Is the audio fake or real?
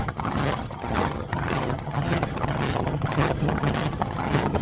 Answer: fake